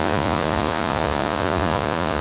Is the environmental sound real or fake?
fake